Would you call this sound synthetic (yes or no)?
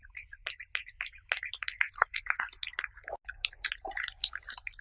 no